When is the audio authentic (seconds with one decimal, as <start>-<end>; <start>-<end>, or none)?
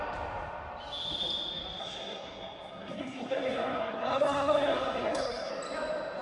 0.0-1.8; 5.5-6.2